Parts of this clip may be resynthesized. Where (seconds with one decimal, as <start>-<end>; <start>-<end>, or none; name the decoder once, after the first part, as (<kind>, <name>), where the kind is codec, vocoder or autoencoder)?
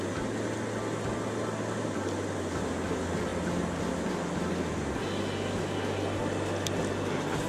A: none